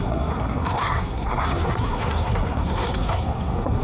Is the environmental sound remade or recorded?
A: remade